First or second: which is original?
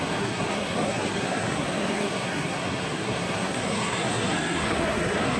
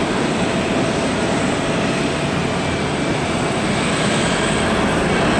second